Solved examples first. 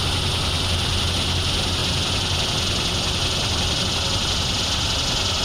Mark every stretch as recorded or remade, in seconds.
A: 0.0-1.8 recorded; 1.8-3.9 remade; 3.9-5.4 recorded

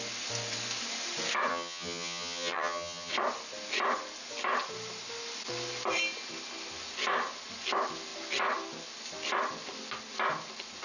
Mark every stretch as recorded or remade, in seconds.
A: 0.0-1.5 recorded; 1.5-3.1 remade; 3.1-10.8 recorded

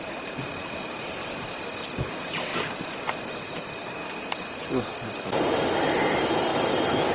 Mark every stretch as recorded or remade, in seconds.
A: 0.0-1.2 remade; 1.2-2.1 recorded; 2.1-2.5 remade; 2.5-3.6 recorded; 3.6-4.0 remade; 4.0-5.2 recorded; 5.2-6.5 remade; 6.5-7.1 recorded

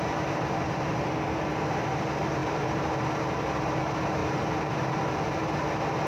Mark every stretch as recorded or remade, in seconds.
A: 0.0-6.1 remade

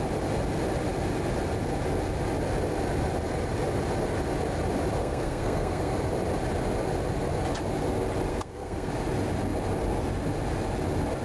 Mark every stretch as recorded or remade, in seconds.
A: 0.0-5.0 recorded; 5.0-5.9 remade; 5.9-8.3 recorded; 8.3-8.9 remade; 8.9-11.2 recorded

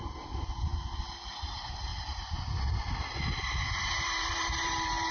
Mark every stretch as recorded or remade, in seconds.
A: 0.0-0.7 remade; 0.7-1.3 recorded; 1.3-1.9 remade; 1.9-3.4 recorded; 3.4-5.1 remade